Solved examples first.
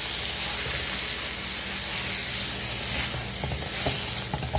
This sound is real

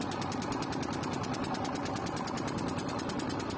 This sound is real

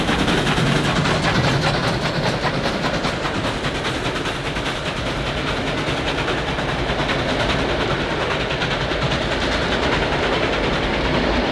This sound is real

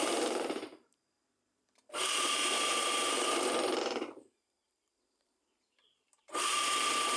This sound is fake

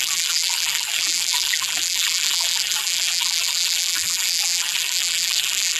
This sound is fake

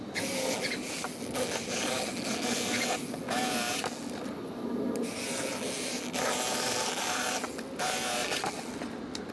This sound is real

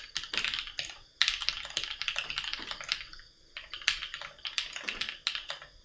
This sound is real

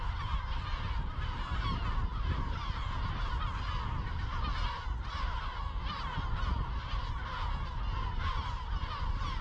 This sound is real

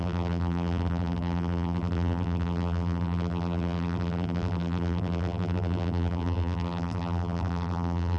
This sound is fake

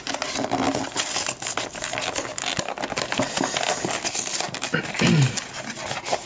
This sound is real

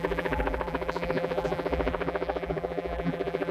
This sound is fake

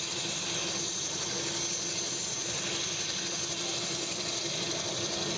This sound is real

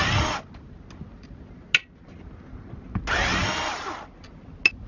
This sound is real